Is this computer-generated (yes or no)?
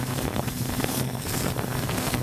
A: yes